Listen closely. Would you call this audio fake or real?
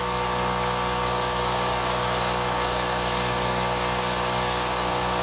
fake